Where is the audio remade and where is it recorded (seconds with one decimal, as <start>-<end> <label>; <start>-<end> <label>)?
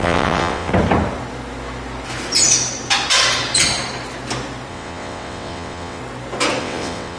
0.0-0.7 remade; 0.7-4.7 recorded; 4.7-6.0 remade; 6.0-6.6 recorded; 6.6-7.2 remade